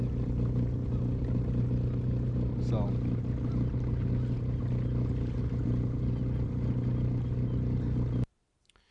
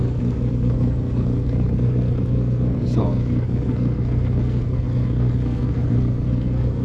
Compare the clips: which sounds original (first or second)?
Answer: first